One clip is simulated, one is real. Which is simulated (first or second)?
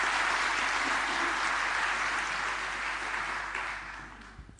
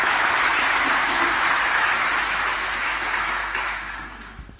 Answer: second